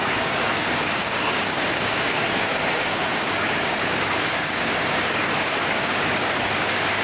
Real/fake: fake